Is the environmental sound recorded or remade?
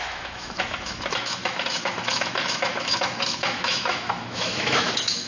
remade